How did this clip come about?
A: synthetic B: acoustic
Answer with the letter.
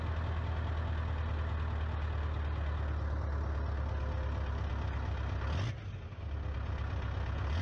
B